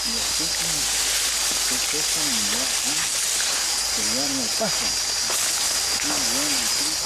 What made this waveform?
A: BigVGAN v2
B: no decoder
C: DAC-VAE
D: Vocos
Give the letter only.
B